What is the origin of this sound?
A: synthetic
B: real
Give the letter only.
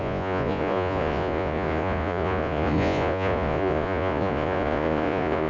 A